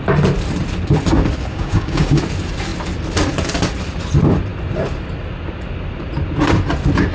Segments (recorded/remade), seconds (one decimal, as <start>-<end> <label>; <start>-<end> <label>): 0.0-1.5 recorded; 1.5-2.2 remade; 2.2-7.1 recorded